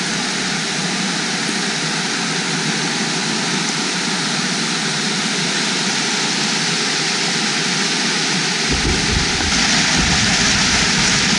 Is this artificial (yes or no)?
no